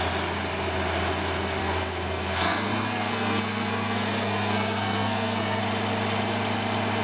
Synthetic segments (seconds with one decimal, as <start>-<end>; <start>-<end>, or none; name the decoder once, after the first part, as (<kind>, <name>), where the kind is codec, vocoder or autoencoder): 1.6-5.6 (codec, SNAC)